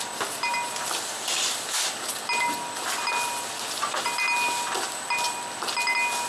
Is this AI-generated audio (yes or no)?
no